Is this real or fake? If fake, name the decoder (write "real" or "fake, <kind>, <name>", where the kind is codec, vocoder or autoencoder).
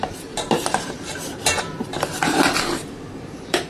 fake, vocoder, BigVGAN v2